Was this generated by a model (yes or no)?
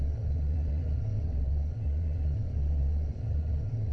yes